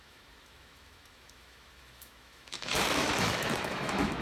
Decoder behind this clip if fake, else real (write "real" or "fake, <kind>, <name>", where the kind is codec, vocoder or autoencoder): fake, autoencoder, DAC-VAE